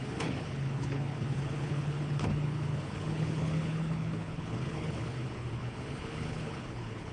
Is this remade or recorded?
remade